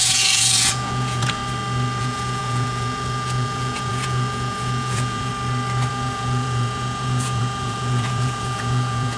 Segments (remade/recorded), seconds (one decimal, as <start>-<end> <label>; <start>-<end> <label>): 0.0-1.4 remade; 1.4-2.0 recorded; 2.0-5.3 remade; 5.3-5.9 recorded; 5.9-9.2 remade